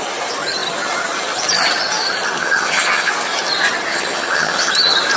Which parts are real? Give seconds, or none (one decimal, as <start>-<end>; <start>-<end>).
0.0-2.4; 3.1-3.9; 4.7-5.2